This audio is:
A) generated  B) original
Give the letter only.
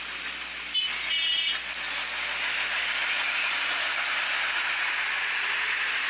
B